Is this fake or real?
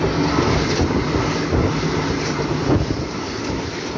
real